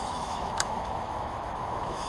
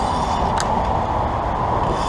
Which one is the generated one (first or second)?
first